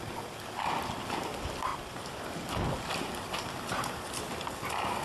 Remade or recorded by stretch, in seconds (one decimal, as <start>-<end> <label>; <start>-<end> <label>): 0.0-1.7 recorded; 1.7-2.2 remade; 2.2-5.0 recorded